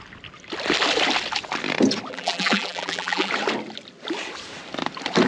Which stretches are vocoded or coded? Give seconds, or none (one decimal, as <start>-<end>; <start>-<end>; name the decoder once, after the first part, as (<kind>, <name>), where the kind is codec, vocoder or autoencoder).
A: 2.1-3.3 (vocoder, BigVGAN v2)